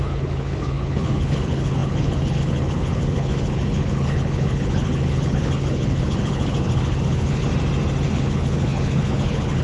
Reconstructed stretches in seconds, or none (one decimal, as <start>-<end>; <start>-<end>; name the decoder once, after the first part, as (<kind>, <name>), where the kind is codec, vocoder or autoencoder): 0.0-7.5 (codec, HILCodec); 8.1-9.6